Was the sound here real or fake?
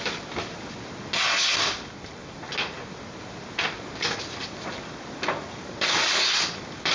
real